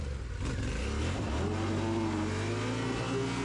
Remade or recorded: recorded